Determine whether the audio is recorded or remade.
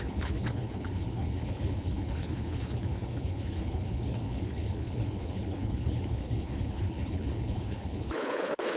remade